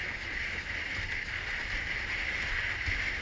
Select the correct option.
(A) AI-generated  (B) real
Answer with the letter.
B